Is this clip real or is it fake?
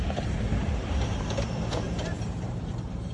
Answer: fake